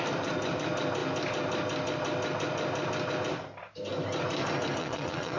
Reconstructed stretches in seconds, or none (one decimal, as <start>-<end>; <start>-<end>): 4.8-5.4